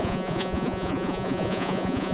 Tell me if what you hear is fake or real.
fake